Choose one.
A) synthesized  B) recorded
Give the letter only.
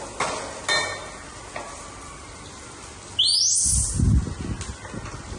B